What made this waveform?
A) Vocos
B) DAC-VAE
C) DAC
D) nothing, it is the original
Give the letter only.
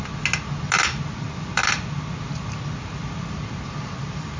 D